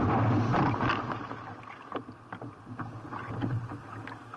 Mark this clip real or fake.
real